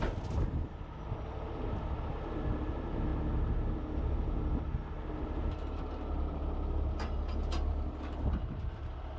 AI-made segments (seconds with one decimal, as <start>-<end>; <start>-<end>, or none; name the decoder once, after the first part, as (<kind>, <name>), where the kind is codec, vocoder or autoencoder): none